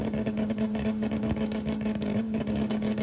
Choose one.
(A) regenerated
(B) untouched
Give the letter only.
A